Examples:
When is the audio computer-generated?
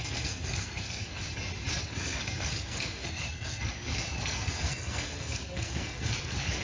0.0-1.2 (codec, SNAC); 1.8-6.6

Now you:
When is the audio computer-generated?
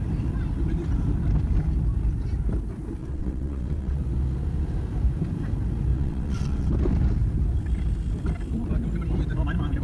3.0-4.0 (vocoder, WaveNeXt); 5.9-6.7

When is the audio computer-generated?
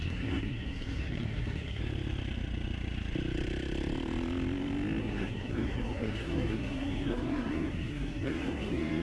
0.0-1.8 (codec, SNAC); 5.0-9.0